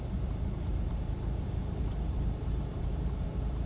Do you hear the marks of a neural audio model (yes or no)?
yes